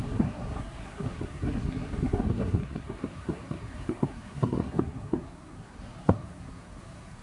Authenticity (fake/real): fake